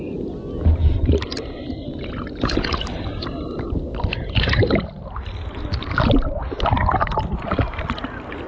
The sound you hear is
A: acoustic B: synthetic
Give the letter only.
A